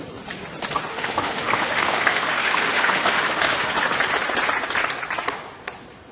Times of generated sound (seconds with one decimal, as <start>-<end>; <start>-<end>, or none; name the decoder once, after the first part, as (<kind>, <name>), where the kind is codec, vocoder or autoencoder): 0.9-3.7 (autoencoder, DAC-VAE)

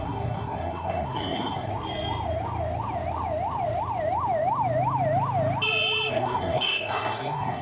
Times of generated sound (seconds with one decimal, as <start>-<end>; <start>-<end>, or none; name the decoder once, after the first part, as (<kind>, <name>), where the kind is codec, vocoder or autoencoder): 0.0-1.7 (codec, SNAC); 6.1-7.6